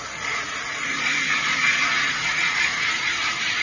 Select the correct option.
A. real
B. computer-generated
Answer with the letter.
B